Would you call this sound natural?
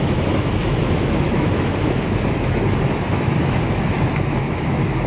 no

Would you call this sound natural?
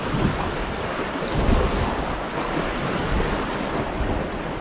yes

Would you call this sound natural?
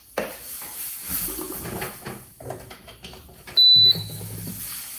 no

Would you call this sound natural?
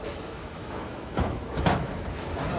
no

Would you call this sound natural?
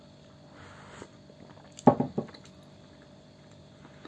yes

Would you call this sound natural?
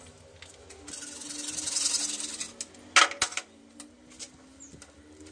yes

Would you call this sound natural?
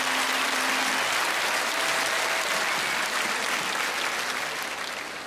yes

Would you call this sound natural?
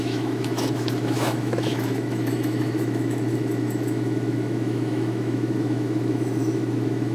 no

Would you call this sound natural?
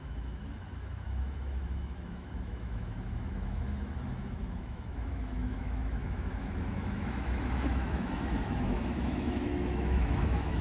no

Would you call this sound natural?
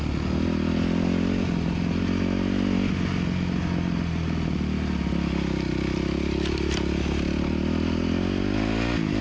yes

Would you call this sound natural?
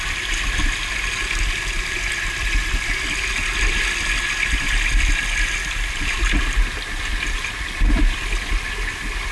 yes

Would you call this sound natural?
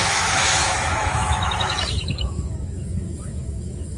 no